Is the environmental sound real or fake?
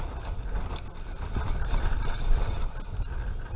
real